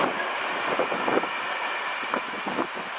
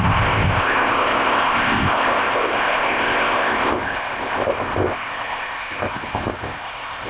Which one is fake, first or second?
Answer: second